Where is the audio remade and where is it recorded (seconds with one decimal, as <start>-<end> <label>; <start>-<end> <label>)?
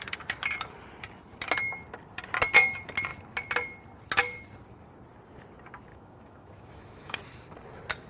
0.0-5.9 recorded; 5.9-7.2 remade; 7.2-8.1 recorded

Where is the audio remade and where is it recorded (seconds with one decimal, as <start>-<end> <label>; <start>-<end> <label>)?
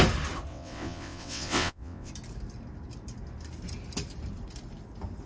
0.0-0.5 recorded; 0.5-2.1 remade; 2.1-5.3 recorded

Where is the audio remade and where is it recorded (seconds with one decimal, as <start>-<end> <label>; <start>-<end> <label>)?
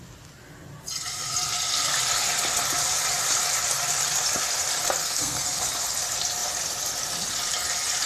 0.0-5.0 recorded; 5.0-5.6 remade; 5.6-8.1 recorded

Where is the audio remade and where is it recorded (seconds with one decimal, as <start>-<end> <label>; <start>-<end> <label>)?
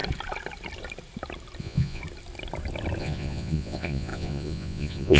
0.0-1.6 recorded; 1.6-2.0 remade; 2.0-3.0 recorded; 3.0-5.2 remade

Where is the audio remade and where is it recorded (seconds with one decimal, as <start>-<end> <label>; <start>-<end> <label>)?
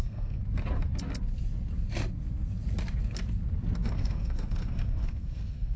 0.0-0.4 remade; 0.4-3.9 recorded; 3.9-5.8 remade